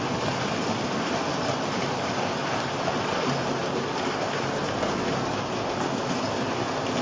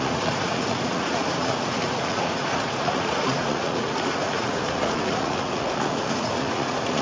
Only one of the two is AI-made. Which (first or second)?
second